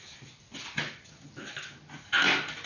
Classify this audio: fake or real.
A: real